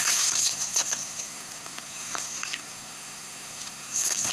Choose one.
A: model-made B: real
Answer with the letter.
A